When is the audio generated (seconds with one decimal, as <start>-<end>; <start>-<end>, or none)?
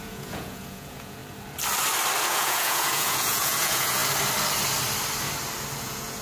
0.0-1.2; 2.2-4.0; 5.8-6.2